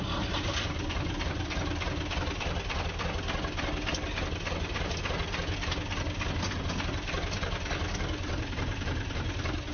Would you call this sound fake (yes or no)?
no